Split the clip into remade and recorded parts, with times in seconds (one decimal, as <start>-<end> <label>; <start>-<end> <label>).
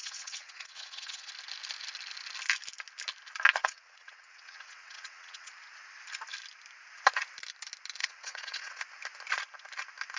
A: 0.0-1.3 remade; 1.3-3.6 recorded; 3.6-5.5 remade; 5.5-8.0 recorded; 8.0-8.8 remade; 8.8-10.2 recorded